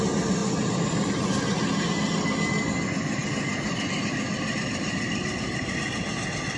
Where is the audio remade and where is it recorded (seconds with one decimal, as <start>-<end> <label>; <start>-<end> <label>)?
0.0-0.4 recorded; 0.4-1.1 remade; 1.1-3.2 recorded; 3.2-5.8 remade; 5.8-6.6 recorded